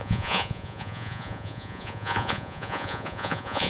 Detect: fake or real fake